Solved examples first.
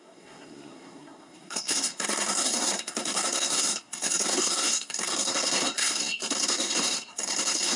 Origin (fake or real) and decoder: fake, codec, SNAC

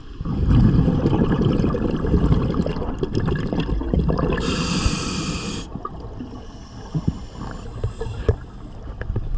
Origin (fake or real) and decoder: real